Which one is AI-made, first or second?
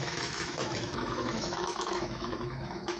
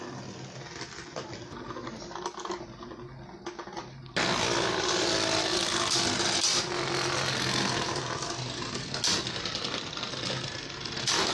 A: first